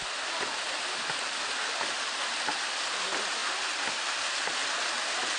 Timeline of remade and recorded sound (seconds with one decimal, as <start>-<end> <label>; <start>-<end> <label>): 0.0-5.4 recorded